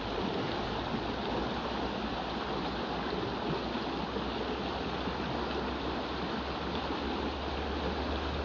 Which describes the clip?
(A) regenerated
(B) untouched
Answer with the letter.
B